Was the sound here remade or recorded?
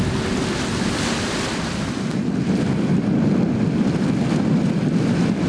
recorded